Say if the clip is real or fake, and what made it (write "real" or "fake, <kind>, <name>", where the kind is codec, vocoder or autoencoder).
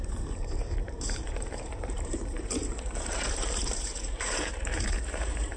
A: fake, vocoder, BigVGAN v2